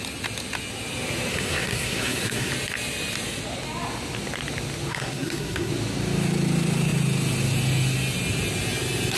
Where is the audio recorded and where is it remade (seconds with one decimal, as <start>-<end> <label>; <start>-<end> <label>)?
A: 0.0-1.3 recorded; 1.3-2.5 remade; 2.5-4.9 recorded; 4.9-5.7 remade; 5.7-9.2 recorded